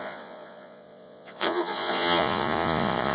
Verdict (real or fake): fake